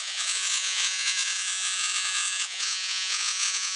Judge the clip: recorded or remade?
remade